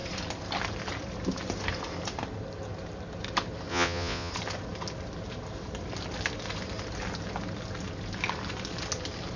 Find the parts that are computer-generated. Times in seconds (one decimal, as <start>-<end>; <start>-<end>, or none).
3.7-4.3